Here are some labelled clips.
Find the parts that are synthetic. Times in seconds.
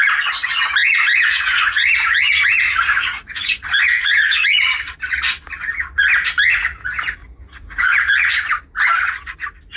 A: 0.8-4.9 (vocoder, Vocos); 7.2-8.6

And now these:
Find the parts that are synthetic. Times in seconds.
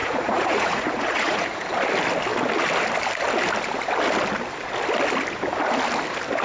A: 0.0-1.7 (vocoder, Vocos)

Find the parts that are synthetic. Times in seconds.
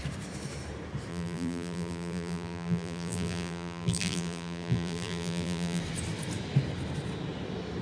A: 1.1-5.8 (vocoder, BigVGAN v2)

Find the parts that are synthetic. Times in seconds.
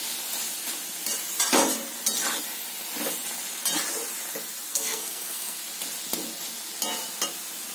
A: 4.7-5.6 (codec, SNAC)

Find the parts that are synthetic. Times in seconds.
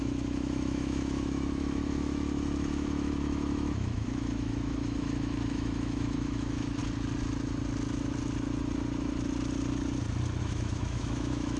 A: 0.0-6.8 (autoencoder, DAC-VAE); 10.4-11.6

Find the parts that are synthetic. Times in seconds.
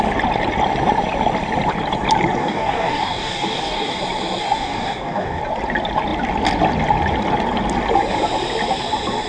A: 2.4-4.0 (codec, DAC); 4.4-5.4